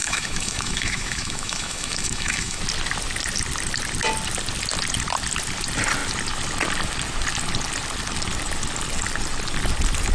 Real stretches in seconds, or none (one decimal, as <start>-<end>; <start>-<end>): 2.6-10.1

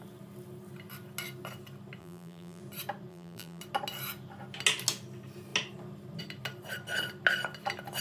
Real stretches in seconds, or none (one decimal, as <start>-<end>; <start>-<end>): 0.0-2.0; 2.6-3.1; 3.6-8.0

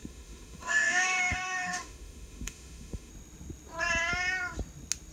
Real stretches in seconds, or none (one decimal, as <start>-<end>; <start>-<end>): 3.1-5.1

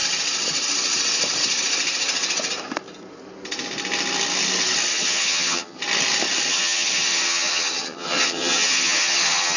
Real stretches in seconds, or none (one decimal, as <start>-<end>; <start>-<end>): 0.0-4.9; 5.8-6.5